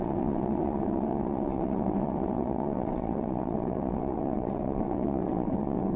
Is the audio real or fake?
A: fake